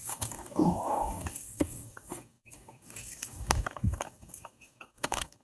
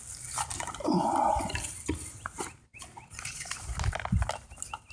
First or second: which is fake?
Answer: first